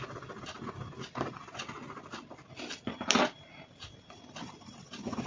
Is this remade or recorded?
recorded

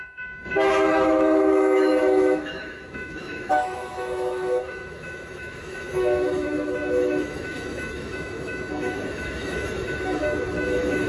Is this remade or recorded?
remade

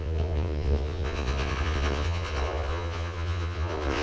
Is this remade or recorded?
remade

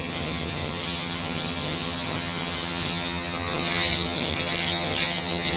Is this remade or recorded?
remade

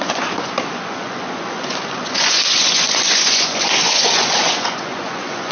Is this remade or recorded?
remade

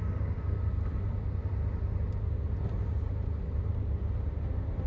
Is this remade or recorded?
recorded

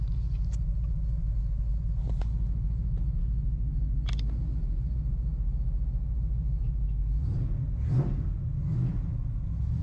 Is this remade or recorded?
recorded